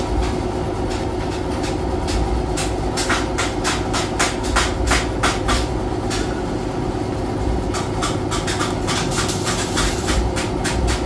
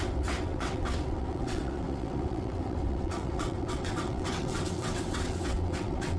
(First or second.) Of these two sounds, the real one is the first